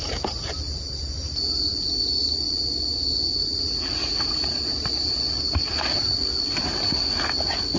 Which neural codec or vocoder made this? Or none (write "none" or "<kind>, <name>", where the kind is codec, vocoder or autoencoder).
none